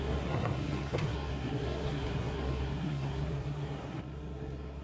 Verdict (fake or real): fake